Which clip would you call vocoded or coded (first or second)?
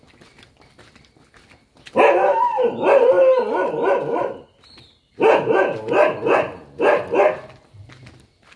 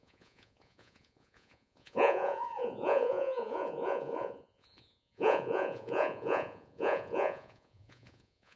second